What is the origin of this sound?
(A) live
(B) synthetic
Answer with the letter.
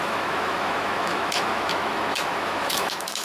B